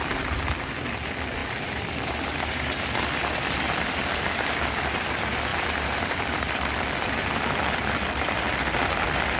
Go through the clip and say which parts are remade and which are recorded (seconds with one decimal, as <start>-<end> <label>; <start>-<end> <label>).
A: 0.0-1.4 recorded; 1.4-2.8 remade; 2.8-5.5 recorded; 5.5-7.4 remade; 7.4-9.4 recorded